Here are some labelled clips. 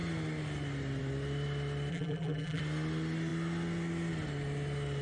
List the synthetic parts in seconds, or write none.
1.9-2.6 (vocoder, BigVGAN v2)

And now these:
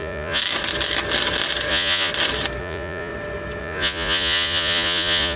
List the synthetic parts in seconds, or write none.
0.0-0.4 (vocoder, Vocos); 1.7-2.1; 2.6-3.1; 3.6-5.4